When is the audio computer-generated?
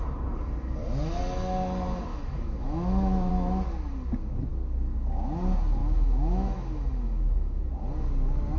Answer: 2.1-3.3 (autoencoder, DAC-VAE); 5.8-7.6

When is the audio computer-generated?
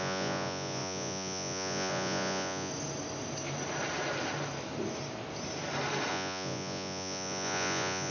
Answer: 0.0-2.7 (vocoder, Vocos); 6.1-8.1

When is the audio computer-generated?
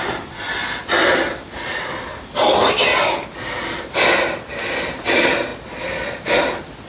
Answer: none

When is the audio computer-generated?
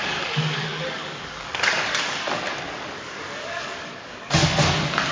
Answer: 0.0-4.4 (codec, DAC)